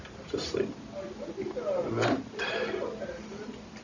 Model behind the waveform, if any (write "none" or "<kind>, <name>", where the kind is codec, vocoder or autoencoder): none